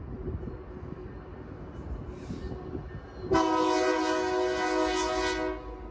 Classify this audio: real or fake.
real